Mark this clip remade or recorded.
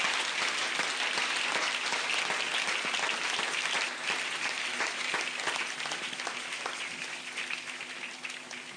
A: recorded